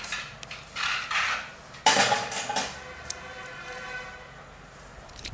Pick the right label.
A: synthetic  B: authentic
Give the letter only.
B